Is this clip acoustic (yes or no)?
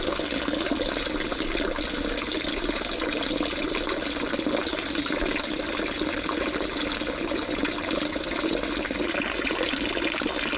yes